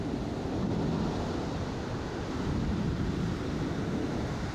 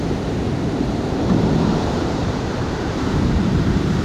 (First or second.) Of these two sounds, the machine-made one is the second